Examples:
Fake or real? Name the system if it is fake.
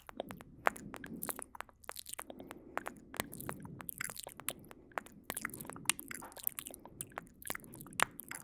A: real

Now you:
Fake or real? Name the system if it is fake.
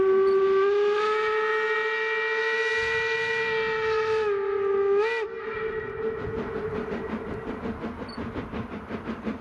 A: real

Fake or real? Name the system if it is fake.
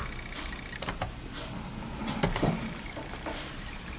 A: real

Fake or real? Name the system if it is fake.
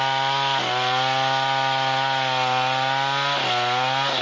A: real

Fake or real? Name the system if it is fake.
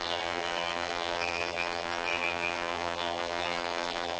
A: fake, vocoder, BigVGAN v2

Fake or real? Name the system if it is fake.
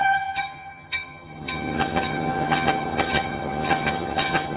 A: fake, vocoder, HiFi-GAN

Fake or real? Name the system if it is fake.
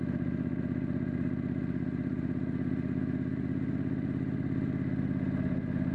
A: real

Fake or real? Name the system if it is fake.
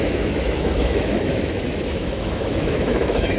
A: fake, autoencoder, DAC-VAE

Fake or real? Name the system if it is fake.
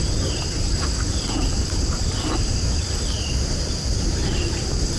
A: real